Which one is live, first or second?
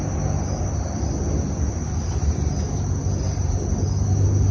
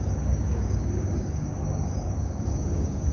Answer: first